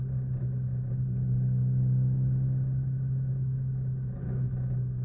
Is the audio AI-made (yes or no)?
no